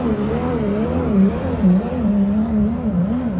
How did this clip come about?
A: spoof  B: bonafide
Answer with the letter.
A